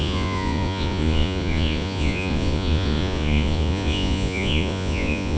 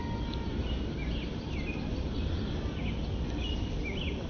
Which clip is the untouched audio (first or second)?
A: second